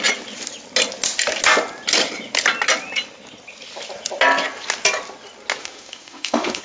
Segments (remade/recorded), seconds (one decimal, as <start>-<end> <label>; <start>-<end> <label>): 0.0-5.6 recorded; 5.6-6.6 remade